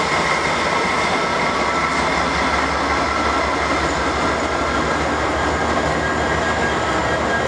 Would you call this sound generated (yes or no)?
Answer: no